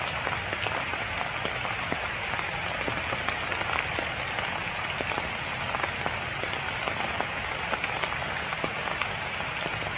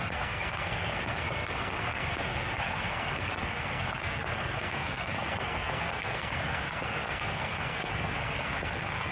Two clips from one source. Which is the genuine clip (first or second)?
first